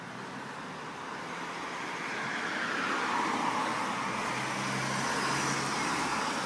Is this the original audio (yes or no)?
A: yes